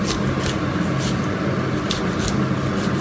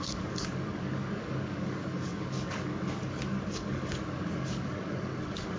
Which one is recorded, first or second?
first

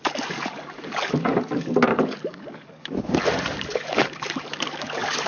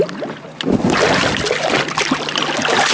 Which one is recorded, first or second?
second